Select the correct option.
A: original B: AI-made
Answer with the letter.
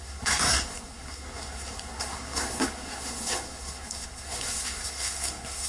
B